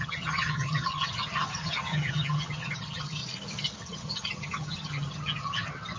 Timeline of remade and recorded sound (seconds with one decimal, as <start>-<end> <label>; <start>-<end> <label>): 0.0-3.2 remade; 3.2-3.8 recorded; 3.8-6.0 remade